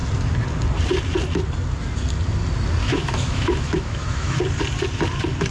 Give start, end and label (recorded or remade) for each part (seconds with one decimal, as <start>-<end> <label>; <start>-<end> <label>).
0.0-2.8 recorded; 2.8-4.4 remade; 4.4-5.5 recorded